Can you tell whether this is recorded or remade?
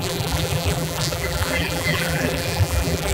remade